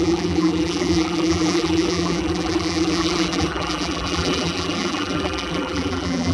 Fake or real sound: fake